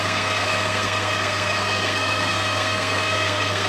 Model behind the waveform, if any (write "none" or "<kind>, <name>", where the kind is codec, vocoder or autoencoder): codec, SNAC